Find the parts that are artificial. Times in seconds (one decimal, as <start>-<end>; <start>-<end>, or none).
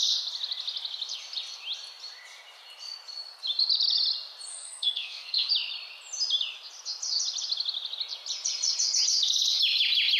4.5-5.5